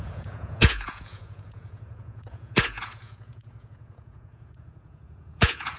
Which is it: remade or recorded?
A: remade